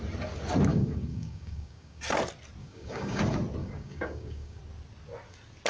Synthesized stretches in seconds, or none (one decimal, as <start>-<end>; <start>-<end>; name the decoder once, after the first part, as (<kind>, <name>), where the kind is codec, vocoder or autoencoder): 0.7-2.0 (codec, DAC); 2.6-3.2; 3.6-4.6